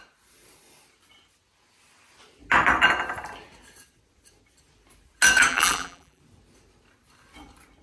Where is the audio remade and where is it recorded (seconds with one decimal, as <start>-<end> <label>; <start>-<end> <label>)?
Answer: 0.0-5.5 recorded; 5.5-6.2 remade; 6.2-7.8 recorded